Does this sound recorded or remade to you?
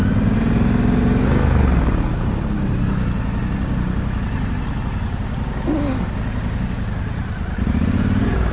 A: recorded